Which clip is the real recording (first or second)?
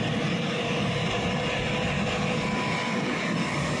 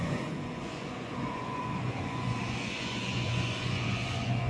first